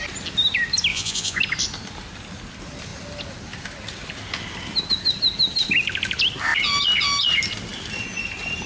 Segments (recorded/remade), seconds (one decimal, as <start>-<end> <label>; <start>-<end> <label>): 0.0-0.9 recorded; 0.9-1.4 remade; 1.4-8.7 recorded